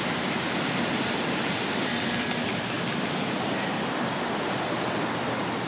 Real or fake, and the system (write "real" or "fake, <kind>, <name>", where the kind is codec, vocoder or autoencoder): real